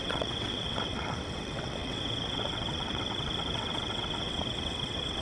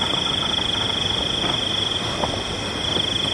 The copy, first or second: first